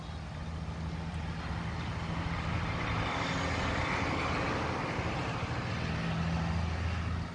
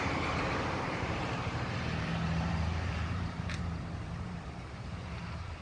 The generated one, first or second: second